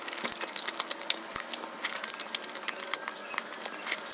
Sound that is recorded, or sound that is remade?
recorded